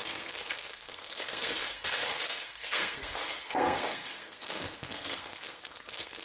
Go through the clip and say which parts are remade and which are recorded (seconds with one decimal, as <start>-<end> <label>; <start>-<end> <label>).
0.0-6.2 remade